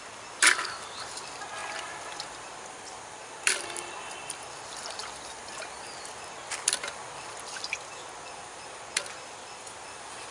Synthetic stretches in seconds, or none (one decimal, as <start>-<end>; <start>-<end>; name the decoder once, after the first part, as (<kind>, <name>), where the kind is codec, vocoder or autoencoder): 1.6-4.3 (vocoder, BigVGAN v2); 5.0-7.0